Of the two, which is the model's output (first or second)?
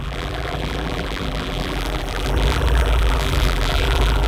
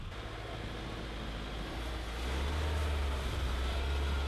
first